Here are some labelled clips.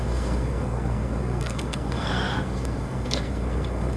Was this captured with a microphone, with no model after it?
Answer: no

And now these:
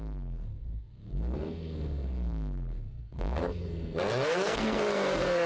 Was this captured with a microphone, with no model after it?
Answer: no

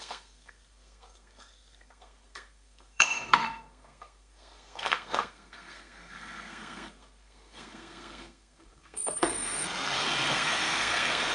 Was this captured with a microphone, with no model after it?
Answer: no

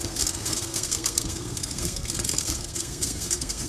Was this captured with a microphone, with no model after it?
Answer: no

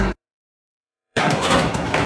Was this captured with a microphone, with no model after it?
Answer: no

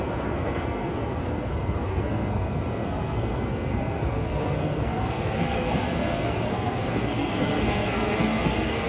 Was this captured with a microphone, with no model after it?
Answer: no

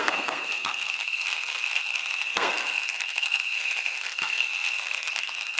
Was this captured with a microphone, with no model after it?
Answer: no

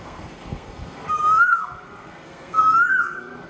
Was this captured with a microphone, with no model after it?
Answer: no